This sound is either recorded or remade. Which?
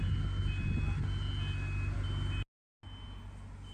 recorded